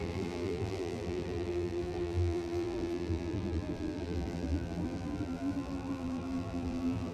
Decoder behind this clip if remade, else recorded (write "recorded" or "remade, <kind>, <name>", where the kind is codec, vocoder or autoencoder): remade, vocoder, BigVGAN v2